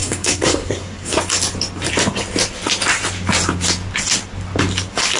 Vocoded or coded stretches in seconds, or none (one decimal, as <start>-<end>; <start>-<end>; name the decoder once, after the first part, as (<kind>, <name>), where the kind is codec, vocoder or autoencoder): 0.0-1.2 (codec, SNAC)